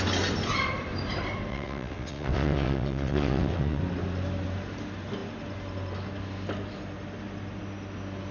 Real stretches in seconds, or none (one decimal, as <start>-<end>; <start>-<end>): 0.0-1.5; 3.8-8.3